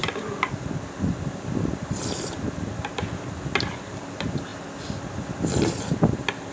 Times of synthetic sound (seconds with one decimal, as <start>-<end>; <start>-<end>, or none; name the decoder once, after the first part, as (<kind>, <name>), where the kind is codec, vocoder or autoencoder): none